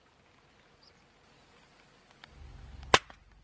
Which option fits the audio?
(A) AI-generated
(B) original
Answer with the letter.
B